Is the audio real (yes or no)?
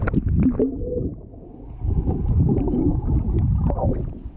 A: yes